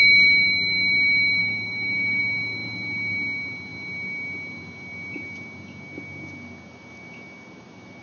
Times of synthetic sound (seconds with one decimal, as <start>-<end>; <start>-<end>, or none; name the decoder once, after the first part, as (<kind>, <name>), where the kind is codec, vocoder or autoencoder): 1.4-2.2 (autoencoder, DAC-VAE)